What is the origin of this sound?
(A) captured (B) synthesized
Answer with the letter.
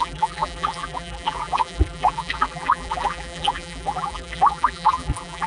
B